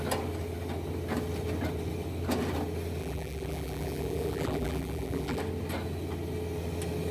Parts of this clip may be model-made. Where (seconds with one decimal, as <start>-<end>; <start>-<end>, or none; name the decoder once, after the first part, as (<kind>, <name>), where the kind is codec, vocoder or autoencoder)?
3.0-5.4 (vocoder, BigVGAN v2)